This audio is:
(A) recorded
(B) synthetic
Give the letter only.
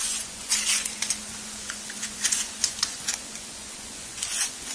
B